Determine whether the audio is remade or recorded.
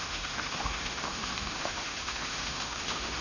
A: remade